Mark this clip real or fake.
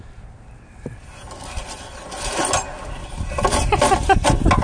real